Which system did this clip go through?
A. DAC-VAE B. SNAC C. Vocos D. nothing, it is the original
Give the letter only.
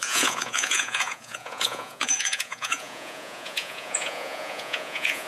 C